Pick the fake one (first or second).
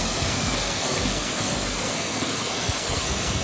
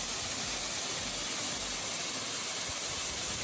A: first